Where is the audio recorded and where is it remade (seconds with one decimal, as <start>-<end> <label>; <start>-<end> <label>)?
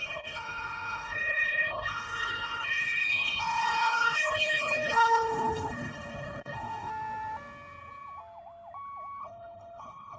0.0-6.9 remade; 6.9-9.2 recorded; 9.2-10.2 remade